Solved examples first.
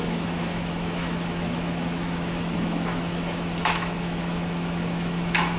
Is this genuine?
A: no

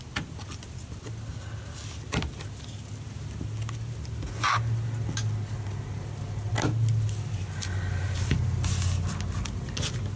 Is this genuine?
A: yes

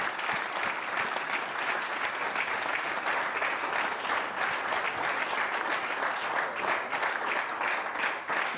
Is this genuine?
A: yes